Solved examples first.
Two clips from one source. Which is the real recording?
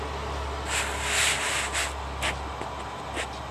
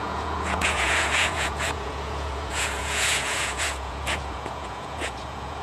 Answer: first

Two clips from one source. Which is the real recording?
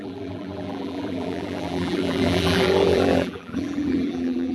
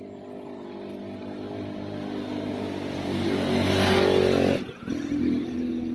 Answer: second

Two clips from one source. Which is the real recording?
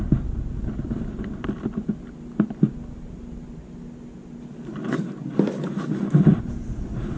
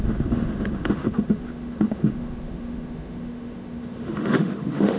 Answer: first